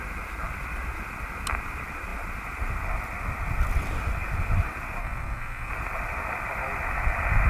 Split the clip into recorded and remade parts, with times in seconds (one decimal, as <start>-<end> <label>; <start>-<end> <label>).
0.0-5.0 recorded; 5.0-5.7 remade; 5.7-7.5 recorded